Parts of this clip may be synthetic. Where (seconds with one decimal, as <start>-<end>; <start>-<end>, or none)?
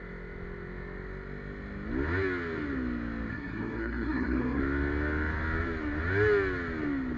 3.3-4.6